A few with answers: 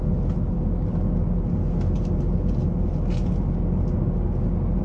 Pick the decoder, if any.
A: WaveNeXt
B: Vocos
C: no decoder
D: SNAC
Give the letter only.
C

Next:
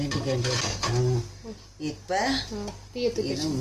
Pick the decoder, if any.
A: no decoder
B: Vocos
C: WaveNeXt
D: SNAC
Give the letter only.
A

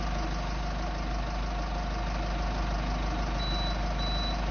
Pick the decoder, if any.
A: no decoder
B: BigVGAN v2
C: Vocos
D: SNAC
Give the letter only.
A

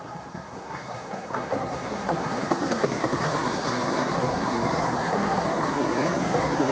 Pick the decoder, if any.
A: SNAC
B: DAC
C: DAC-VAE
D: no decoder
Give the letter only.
A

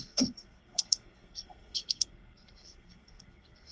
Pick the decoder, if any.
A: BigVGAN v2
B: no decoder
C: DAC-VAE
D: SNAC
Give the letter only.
D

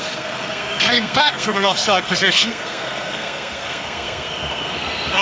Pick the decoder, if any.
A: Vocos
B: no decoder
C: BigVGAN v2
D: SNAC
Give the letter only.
D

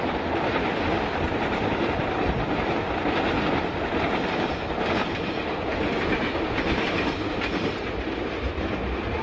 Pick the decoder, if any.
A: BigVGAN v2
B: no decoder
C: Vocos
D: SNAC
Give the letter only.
B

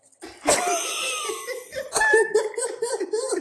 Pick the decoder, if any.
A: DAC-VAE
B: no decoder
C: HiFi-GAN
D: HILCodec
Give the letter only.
B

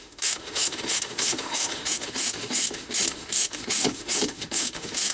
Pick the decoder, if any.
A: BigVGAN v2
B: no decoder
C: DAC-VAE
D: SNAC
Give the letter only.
C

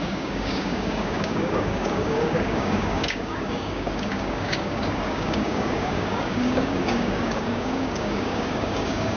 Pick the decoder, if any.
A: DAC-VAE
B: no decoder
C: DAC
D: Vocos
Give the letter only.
C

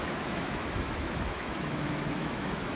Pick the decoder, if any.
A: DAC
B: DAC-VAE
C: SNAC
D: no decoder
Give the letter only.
B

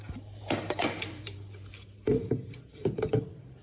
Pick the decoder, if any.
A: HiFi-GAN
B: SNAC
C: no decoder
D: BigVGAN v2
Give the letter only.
D